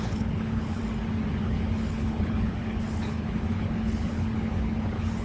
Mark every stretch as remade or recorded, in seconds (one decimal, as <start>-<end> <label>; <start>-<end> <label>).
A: 0.0-0.8 remade; 0.8-1.3 recorded; 1.3-5.2 remade